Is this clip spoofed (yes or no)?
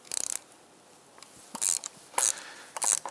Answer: no